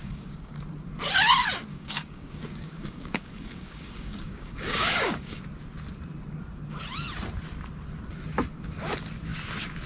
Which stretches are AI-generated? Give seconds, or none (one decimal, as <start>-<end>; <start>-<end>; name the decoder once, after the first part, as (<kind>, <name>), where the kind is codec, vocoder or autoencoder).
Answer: 0.0-0.6 (codec, DAC); 1.7-5.4